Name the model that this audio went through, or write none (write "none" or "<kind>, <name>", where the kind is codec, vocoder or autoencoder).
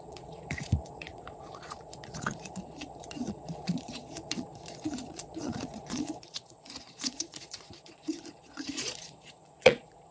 vocoder, Vocos